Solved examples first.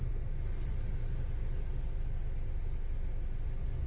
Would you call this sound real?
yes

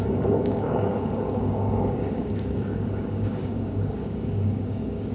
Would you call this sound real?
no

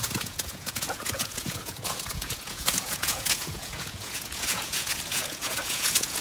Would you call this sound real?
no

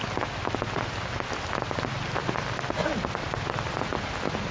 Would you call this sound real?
yes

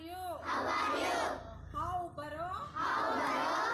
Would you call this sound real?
yes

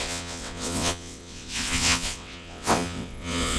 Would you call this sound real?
no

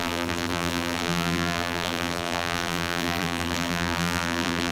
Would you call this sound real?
no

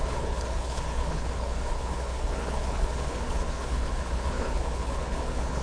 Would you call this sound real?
no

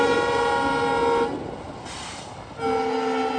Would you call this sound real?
yes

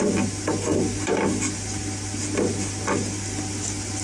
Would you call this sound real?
yes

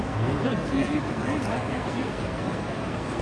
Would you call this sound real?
no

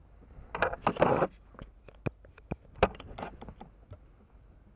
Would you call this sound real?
yes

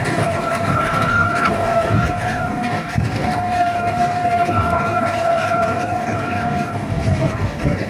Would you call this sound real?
no